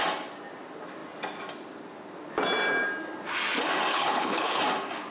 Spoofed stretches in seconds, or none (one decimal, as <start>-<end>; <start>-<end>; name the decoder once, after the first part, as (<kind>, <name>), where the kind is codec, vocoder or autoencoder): 3.9-4.6 (codec, HILCodec)